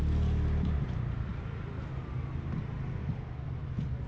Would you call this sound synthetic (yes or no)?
no